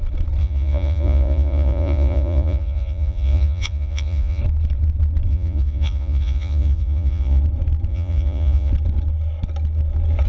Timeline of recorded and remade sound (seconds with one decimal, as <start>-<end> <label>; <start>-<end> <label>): 0.0-0.4 recorded; 0.4-4.4 remade; 4.4-5.3 recorded; 5.3-7.4 remade; 7.4-7.9 recorded; 7.9-8.7 remade; 8.7-10.3 recorded